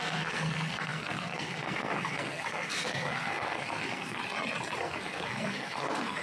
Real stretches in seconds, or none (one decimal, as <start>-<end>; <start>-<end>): 4.2-4.8